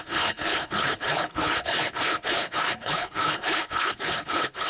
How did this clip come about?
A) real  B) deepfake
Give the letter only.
B